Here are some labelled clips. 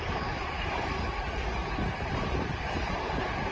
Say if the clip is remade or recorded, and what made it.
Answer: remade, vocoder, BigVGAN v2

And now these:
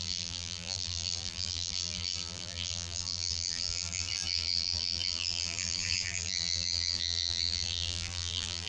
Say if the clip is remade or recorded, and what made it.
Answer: remade, vocoder, BigVGAN v2